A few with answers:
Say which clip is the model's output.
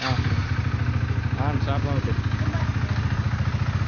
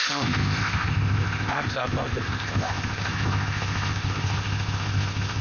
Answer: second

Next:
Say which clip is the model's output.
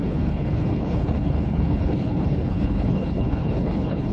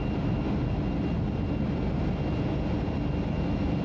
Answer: first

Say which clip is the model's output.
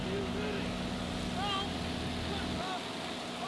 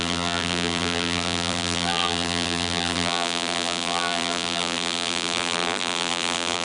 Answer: second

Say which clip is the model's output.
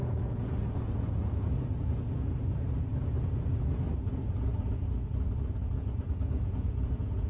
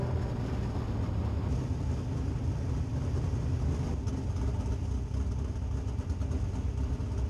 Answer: first